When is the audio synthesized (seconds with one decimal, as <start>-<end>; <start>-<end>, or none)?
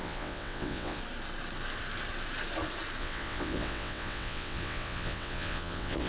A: 0.0-1.0; 3.0-6.1